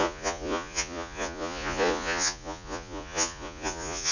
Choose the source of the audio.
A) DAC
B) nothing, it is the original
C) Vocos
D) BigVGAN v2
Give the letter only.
C